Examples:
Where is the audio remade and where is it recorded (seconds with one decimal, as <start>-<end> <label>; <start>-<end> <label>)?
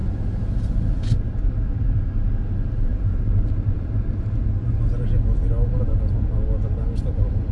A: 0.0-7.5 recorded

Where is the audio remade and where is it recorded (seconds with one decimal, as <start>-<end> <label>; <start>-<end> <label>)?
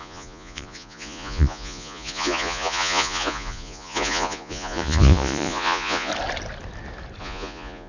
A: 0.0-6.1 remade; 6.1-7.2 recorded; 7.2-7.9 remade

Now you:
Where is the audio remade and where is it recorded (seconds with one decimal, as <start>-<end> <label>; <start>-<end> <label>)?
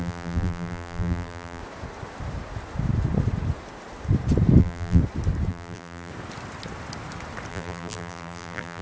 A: 0.0-1.6 remade; 1.6-4.6 recorded; 4.6-5.0 remade; 5.0-5.5 recorded; 5.5-6.1 remade; 6.1-7.5 recorded; 7.5-8.8 remade